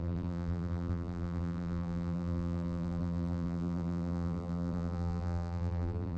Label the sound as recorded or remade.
remade